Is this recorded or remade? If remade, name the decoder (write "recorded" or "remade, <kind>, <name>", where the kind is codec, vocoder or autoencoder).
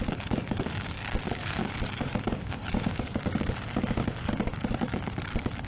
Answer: remade, codec, DAC